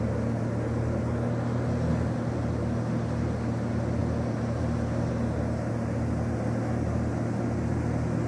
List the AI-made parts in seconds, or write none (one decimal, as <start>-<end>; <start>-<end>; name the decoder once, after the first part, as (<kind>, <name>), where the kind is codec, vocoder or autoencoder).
none